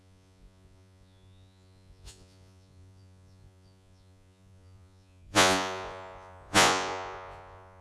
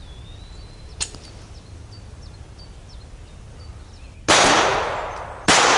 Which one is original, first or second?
second